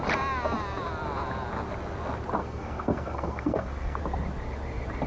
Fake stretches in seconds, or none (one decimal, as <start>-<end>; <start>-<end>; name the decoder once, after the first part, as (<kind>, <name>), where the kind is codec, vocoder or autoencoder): 2.4-4.0 (codec, SNAC)